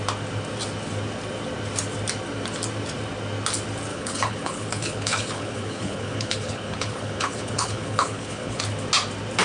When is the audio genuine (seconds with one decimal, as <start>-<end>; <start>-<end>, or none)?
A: 0.0-3.9; 8.6-9.4